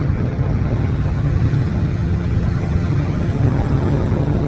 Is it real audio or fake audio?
fake